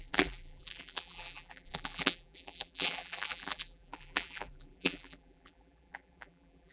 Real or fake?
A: fake